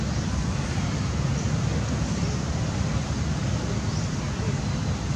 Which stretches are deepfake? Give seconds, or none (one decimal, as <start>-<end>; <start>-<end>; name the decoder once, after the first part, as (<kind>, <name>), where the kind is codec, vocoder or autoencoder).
none